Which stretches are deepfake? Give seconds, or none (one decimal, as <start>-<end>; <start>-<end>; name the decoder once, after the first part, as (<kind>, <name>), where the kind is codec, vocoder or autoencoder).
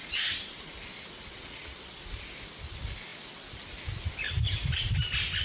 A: 1.3-1.9 (vocoder, WaveNeXt)